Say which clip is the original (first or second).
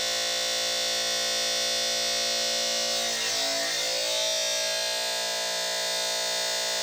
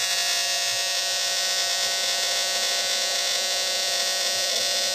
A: first